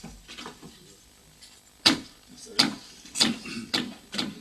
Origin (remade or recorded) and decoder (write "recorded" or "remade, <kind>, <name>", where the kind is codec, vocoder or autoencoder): recorded